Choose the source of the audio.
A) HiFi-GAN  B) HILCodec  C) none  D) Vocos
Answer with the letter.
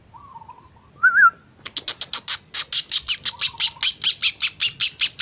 C